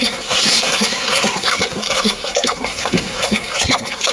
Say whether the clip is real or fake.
fake